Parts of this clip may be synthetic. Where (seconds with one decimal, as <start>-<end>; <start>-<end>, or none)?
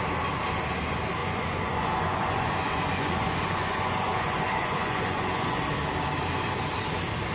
1.2-5.6